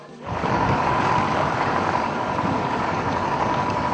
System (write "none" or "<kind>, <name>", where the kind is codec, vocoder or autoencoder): codec, DAC